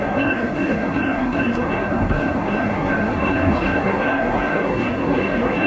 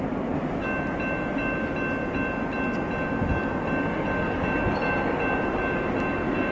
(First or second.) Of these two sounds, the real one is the second